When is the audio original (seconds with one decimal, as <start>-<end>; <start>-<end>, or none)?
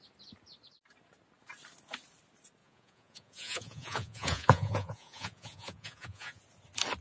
0.0-2.6; 6.4-7.0